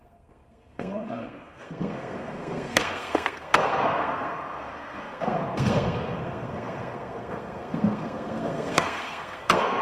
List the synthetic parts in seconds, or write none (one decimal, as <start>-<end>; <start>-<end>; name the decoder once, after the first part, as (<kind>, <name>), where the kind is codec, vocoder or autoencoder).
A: 0.0-9.8 (codec, SNAC)